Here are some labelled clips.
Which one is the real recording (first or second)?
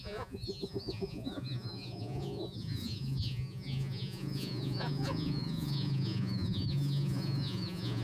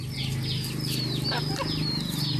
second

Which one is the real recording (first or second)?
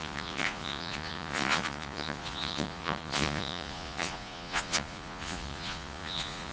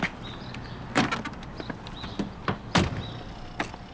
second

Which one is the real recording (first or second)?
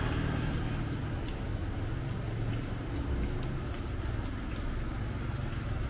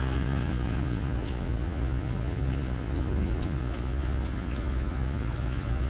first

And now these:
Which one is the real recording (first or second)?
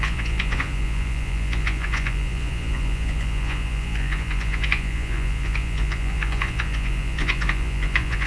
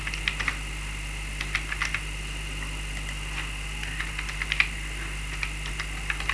second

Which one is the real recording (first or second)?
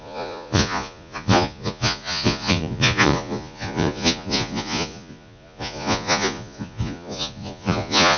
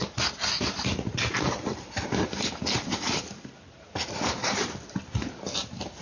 second